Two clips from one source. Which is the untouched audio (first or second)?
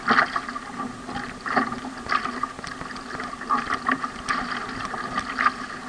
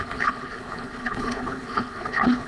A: first